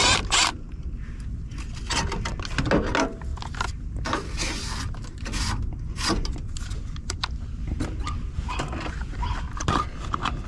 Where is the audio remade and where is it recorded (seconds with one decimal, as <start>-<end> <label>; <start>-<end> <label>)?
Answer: 0.0-10.5 recorded